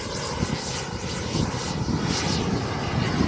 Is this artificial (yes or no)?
no